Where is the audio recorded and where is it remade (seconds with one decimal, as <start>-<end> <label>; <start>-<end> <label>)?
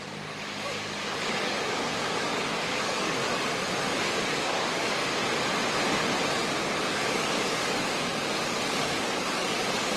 0.0-3.2 remade; 3.2-4.2 recorded; 4.2-5.0 remade; 5.0-6.7 recorded; 6.7-10.0 remade